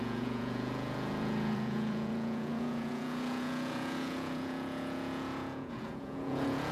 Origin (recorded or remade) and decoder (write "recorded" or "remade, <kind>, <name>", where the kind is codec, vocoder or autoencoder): remade, vocoder, Vocos